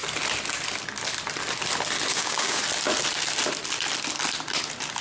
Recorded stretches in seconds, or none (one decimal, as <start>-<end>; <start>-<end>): 0.0-2.1; 2.6-5.0